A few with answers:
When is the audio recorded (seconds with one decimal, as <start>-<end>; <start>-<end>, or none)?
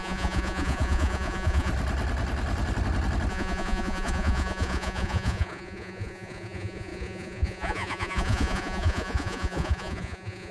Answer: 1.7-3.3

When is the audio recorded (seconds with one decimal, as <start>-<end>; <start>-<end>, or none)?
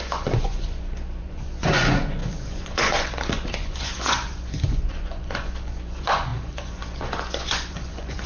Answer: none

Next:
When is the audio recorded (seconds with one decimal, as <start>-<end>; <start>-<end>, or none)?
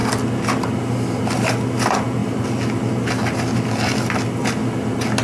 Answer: 0.0-5.2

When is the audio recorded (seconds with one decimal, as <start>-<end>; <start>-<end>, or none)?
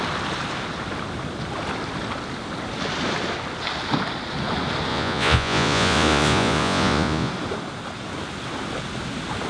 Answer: 0.0-4.9; 7.3-9.5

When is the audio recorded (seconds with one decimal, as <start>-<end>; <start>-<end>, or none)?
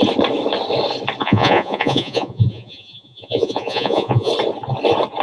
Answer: 0.0-1.2; 4.3-5.2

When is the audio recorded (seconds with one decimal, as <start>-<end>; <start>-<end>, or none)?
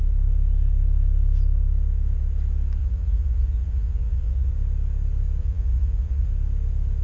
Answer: 0.0-2.8; 4.5-5.4; 6.3-7.0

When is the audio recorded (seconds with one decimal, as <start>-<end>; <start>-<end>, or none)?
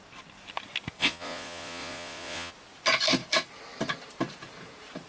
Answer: 0.0-1.0; 2.5-5.1